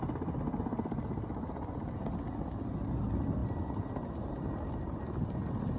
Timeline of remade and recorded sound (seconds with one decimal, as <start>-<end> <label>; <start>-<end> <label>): 0.0-5.8 recorded